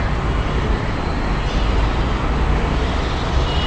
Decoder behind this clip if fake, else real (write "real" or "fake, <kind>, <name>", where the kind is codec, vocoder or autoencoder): real